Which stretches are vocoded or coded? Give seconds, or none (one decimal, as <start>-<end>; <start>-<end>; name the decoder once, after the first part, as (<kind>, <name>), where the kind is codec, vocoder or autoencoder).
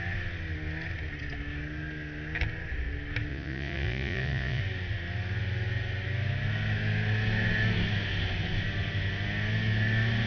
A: 3.3-4.6 (vocoder, Vocos)